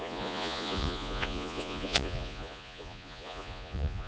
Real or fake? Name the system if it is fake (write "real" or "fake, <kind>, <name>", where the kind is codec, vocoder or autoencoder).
fake, vocoder, Vocos